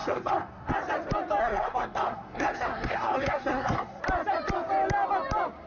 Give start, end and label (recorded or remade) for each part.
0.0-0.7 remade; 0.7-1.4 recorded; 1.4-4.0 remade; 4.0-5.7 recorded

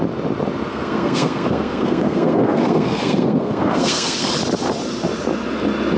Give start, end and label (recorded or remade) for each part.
0.0-0.7 recorded; 0.7-4.3 remade; 4.3-6.0 recorded